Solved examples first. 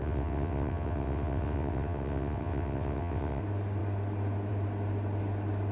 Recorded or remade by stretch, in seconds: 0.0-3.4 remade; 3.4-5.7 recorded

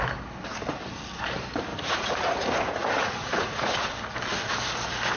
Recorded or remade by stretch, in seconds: 0.0-1.7 recorded; 1.7-3.9 remade; 3.9-5.2 recorded

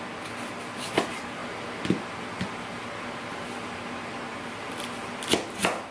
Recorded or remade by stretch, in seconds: 0.0-5.9 recorded

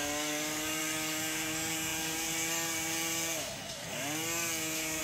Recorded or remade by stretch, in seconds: 0.0-5.0 remade

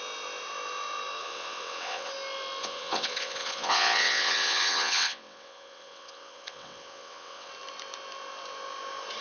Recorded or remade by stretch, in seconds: 0.0-1.2 recorded; 1.2-2.1 remade; 2.1-2.6 recorded; 2.6-7.5 remade; 7.5-9.2 recorded

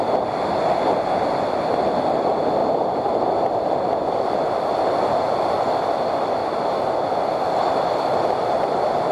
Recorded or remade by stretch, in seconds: 0.0-2.6 recorded; 2.6-3.2 remade; 3.2-6.4 recorded; 6.4-6.9 remade; 6.9-9.1 recorded

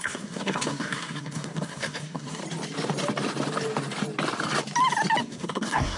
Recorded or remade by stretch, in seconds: 0.0-2.4 remade; 2.4-5.2 recorded; 5.2-6.0 remade